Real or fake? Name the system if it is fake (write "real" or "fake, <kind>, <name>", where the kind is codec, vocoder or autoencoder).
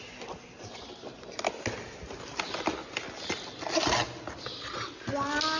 real